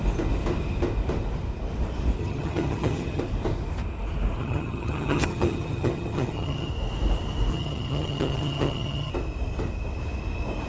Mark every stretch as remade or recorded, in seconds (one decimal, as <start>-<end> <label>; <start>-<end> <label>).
0.0-2.2 recorded; 2.2-3.2 remade; 3.2-4.4 recorded; 4.4-6.7 remade; 6.7-7.5 recorded; 7.5-9.1 remade; 9.1-10.7 recorded

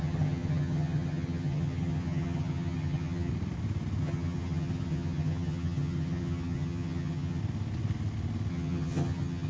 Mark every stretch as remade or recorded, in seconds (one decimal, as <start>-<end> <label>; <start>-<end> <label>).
0.0-3.3 remade; 3.3-4.0 recorded; 4.0-7.4 remade; 7.4-8.5 recorded; 8.5-9.5 remade

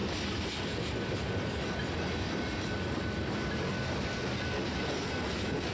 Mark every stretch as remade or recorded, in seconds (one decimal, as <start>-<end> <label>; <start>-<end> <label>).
0.0-5.7 recorded